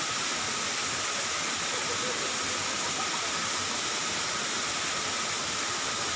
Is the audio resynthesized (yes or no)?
no